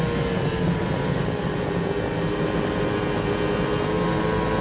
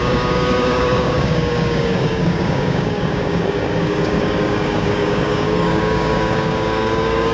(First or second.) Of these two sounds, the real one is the first